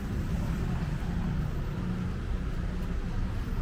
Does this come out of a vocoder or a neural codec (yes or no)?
no